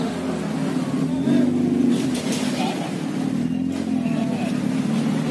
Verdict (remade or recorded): recorded